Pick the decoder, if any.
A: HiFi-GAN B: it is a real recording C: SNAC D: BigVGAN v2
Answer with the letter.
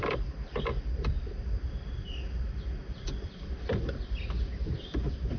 B